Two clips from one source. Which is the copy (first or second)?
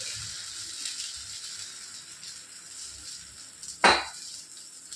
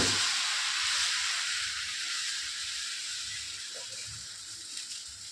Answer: second